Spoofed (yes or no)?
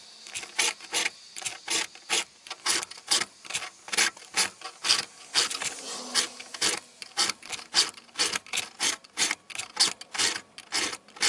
no